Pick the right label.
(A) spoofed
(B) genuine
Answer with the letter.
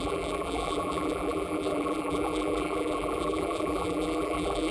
A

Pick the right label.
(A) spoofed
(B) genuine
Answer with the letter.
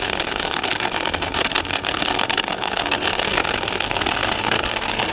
A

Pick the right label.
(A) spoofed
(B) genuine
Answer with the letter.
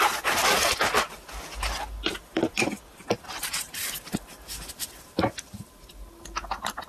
B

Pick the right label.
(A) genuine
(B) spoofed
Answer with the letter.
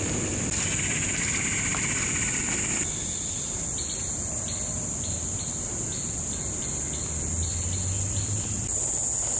A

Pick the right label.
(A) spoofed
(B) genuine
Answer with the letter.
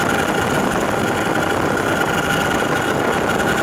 B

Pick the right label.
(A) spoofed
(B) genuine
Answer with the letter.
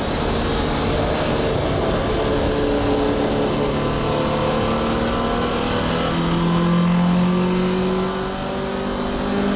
B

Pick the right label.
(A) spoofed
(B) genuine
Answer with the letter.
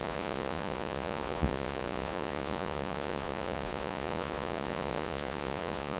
A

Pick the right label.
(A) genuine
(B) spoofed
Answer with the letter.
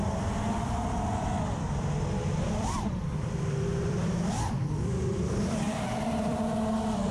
B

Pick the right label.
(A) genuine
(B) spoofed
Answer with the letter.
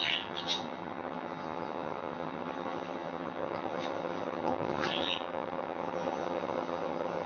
B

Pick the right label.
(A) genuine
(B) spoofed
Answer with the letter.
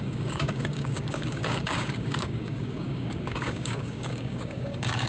B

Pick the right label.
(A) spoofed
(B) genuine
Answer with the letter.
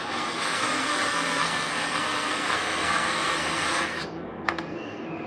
A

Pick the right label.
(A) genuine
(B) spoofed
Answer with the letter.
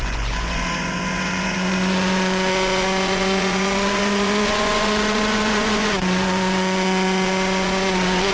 B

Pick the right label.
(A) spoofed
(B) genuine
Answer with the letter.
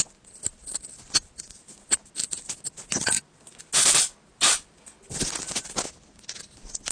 B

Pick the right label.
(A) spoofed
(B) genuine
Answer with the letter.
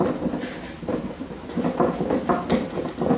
B